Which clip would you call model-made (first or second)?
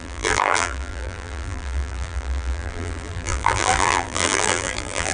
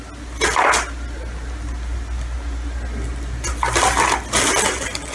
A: first